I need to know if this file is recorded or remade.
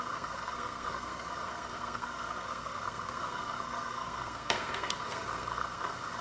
remade